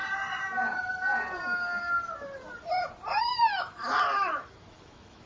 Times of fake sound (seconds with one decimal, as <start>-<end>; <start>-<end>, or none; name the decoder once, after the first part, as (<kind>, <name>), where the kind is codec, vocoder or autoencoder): 3.2-3.8 (autoencoder, DAC-VAE); 4.4-5.3